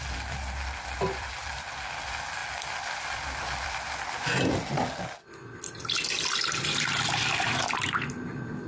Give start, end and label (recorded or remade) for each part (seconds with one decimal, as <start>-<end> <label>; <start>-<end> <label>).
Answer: 0.0-8.7 recorded